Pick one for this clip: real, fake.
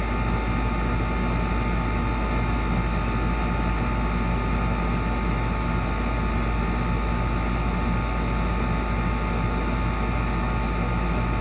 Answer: real